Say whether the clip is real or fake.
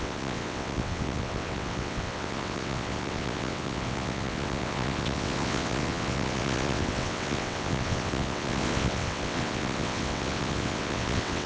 fake